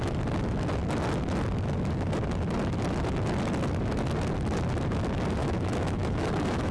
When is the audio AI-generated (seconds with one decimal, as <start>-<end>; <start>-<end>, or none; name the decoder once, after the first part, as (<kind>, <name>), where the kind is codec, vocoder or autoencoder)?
5.4-6.7 (autoencoder, DAC-VAE)

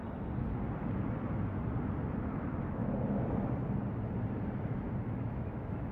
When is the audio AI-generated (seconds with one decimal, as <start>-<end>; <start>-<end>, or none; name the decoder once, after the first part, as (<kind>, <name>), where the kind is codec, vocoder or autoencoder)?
2.2-2.8 (autoencoder, DAC-VAE); 5.0-5.9